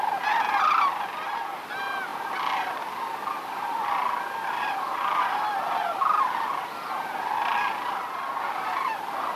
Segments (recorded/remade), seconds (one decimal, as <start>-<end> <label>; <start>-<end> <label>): 0.0-9.4 recorded